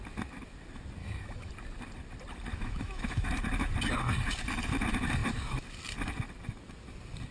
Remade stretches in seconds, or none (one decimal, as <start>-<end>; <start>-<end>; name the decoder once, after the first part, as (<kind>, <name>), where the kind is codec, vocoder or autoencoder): 1.0-1.5 (autoencoder, DAC-VAE); 2.5-3.3